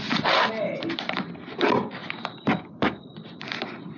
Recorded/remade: remade